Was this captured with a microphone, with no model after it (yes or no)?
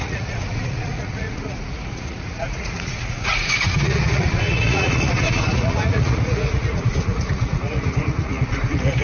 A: no